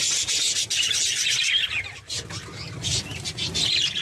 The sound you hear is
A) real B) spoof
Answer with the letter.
A